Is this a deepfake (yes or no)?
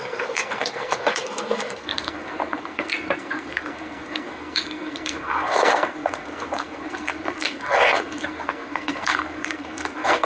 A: yes